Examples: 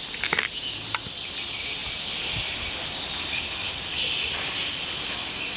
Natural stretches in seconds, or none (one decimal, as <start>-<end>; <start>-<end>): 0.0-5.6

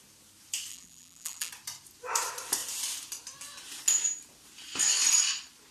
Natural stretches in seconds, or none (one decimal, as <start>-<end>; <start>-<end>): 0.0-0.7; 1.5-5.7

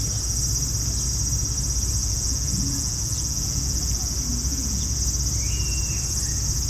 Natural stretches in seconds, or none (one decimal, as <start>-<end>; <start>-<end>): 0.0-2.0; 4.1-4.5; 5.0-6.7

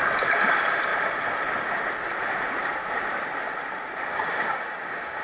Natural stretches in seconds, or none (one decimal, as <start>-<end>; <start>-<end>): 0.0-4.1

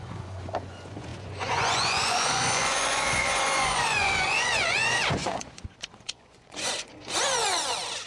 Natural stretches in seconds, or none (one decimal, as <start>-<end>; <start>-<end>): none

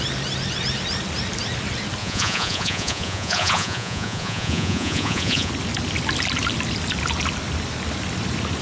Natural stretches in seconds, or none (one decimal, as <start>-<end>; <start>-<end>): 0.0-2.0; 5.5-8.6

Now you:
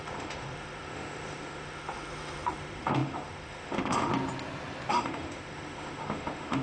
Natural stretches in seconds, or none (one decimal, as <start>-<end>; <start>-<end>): 4.1-4.9

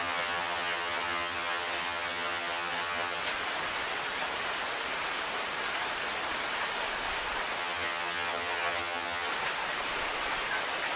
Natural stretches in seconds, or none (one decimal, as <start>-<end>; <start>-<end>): 3.2-7.6; 9.3-11.0